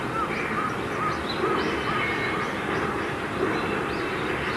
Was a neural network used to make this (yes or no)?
no